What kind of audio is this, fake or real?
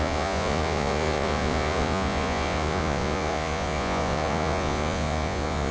fake